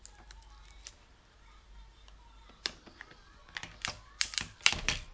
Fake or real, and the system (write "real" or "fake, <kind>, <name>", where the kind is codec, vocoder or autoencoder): real